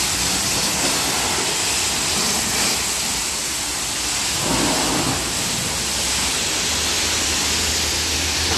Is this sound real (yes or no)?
yes